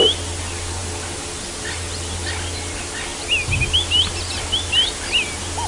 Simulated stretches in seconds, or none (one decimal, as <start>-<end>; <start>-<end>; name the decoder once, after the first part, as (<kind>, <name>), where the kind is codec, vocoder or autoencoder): none